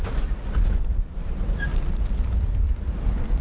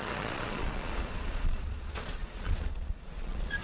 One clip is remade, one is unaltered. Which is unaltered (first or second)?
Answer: first